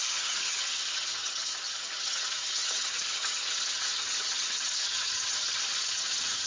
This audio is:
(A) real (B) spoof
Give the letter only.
B